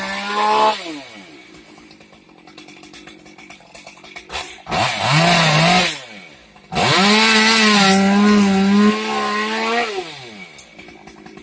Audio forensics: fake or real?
real